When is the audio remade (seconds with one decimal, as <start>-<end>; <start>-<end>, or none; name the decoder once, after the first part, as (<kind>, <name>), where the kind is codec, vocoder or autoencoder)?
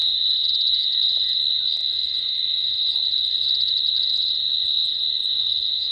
none